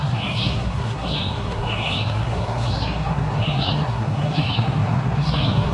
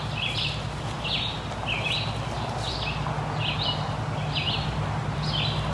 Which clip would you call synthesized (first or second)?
first